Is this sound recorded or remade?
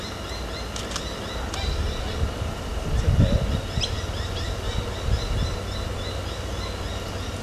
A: recorded